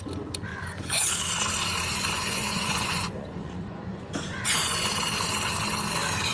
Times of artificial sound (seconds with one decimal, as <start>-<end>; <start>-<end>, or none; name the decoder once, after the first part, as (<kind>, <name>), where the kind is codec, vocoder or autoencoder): 0.5-1.1 (vocoder, Vocos); 1.9-4.9